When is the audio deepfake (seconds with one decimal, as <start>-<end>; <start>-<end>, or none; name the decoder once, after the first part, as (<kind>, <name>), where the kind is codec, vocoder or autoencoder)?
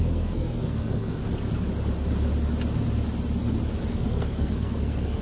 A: 0.0-1.2 (codec, SNAC); 3.9-5.2